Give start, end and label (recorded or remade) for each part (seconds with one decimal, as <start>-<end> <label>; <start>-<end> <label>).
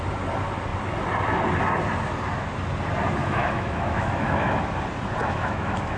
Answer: 0.0-3.2 recorded; 3.2-4.6 remade; 4.6-5.2 recorded; 5.2-6.0 remade